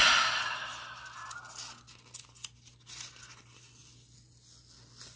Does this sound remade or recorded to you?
recorded